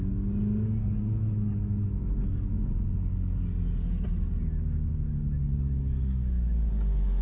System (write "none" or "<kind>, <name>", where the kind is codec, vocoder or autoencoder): none